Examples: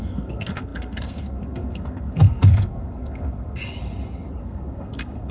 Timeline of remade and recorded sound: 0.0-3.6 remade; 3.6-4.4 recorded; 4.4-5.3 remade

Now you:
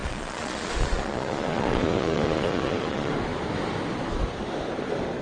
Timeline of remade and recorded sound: 0.0-3.1 remade; 3.1-5.2 recorded

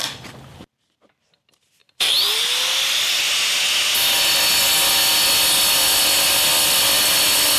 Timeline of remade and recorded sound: 0.0-1.8 recorded; 1.8-2.4 remade; 2.4-7.6 recorded

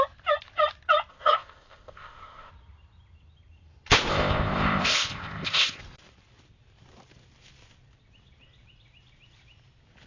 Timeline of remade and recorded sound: 0.0-1.1 recorded; 1.1-2.5 remade; 2.5-4.1 recorded; 4.1-5.8 remade; 5.8-10.1 recorded

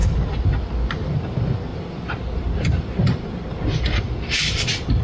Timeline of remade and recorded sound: 0.0-1.2 recorded; 1.2-5.0 remade

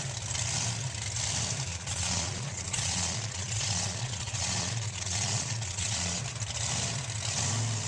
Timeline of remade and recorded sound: 0.0-1.7 recorded; 1.7-6.2 remade; 6.2-7.9 recorded